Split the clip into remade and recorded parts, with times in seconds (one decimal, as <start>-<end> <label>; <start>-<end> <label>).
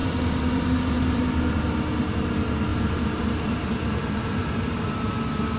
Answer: 0.0-1.2 remade; 1.2-2.7 recorded; 2.7-5.1 remade; 5.1-5.6 recorded